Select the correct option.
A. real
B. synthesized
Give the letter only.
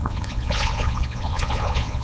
B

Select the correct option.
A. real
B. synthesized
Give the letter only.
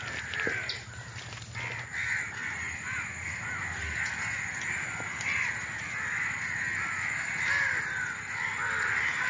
A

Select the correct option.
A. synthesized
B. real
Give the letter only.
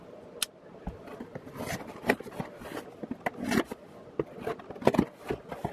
B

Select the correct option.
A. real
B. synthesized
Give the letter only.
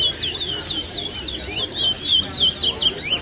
A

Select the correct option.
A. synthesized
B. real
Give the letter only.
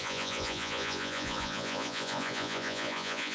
A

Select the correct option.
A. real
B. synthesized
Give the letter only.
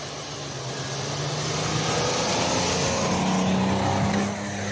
A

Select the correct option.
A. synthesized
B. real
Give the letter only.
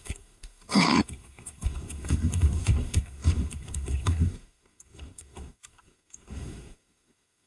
A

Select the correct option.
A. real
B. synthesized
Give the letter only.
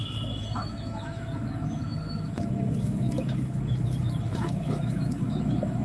B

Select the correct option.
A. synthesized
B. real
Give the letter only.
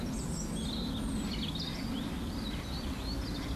B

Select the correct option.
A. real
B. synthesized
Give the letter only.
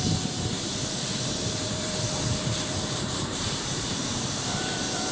B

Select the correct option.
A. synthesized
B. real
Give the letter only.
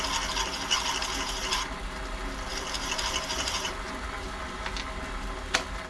B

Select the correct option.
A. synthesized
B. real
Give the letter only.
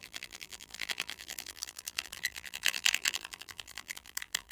A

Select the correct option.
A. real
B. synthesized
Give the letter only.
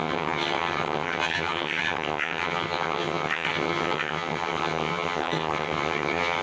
B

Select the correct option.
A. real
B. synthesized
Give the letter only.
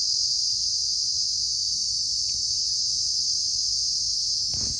A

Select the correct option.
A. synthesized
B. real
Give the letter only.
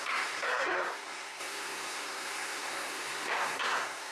A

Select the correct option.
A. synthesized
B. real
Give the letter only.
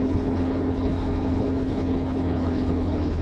A